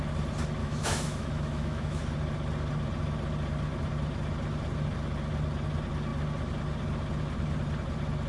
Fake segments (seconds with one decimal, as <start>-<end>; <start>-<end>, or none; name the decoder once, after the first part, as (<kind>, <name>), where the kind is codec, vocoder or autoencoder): 0.6-2.0 (autoencoder, DAC-VAE)